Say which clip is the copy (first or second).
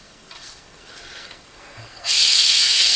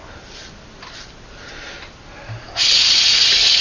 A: first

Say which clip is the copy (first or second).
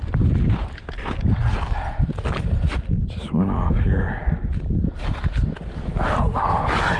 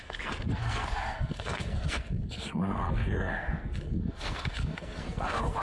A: second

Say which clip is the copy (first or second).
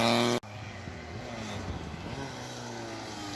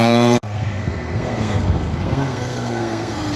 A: second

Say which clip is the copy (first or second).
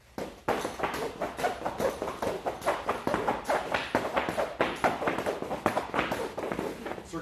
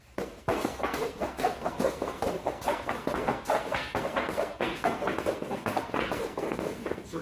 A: second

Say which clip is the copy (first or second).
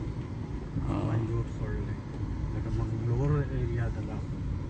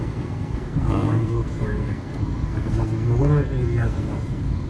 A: second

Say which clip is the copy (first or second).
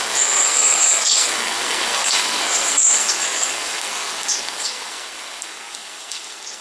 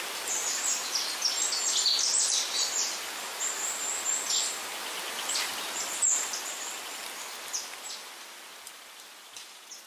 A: first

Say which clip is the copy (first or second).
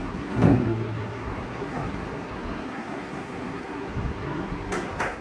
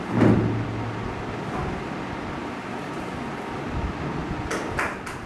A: first